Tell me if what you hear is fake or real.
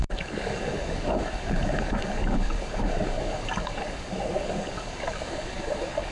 fake